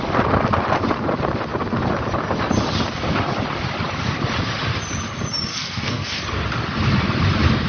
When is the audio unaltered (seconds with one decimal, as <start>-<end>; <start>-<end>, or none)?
0.0-5.5; 6.2-7.7